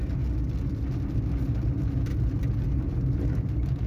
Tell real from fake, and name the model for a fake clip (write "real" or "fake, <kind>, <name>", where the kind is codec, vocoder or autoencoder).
real